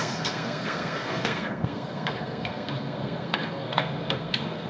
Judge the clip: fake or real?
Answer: fake